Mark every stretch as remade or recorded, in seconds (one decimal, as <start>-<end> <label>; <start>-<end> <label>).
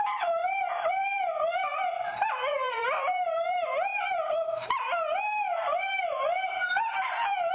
0.0-7.5 remade